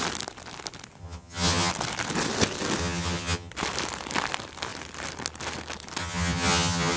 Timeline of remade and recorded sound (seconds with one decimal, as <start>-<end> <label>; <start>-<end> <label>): 0.0-1.0 recorded; 1.0-1.7 remade; 1.7-2.8 recorded; 2.8-3.5 remade; 3.5-6.0 recorded; 6.0-7.0 remade